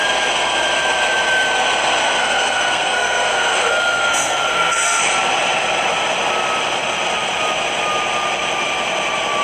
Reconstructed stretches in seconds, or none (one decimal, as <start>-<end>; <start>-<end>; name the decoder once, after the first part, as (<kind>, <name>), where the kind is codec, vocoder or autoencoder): 2.2-5.0 (codec, SNAC)